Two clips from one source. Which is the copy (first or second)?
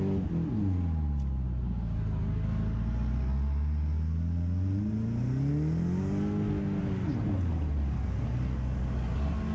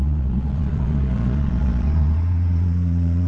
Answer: second